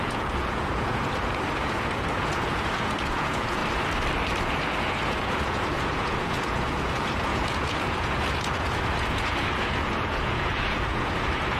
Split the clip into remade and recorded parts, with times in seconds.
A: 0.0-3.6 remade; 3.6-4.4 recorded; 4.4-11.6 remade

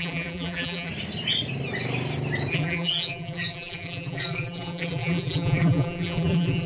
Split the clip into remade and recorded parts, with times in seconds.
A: 0.0-0.9 remade; 0.9-2.5 recorded; 2.5-6.7 remade